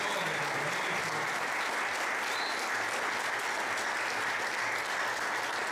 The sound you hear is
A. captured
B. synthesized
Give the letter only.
A